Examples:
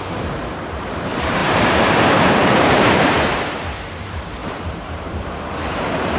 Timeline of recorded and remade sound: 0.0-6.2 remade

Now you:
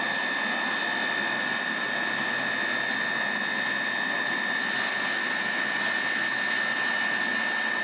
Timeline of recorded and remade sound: 0.0-7.8 recorded